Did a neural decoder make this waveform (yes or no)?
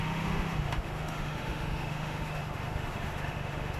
yes